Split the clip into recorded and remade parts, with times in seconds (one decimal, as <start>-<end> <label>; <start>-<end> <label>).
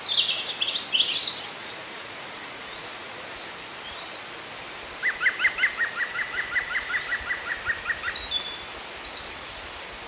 0.0-1.6 recorded; 1.6-3.1 remade; 3.1-10.1 recorded